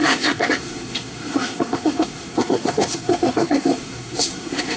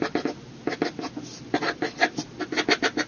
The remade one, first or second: first